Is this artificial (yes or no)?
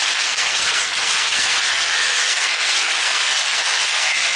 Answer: yes